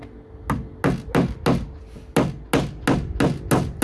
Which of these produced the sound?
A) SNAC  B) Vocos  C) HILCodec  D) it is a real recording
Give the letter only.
D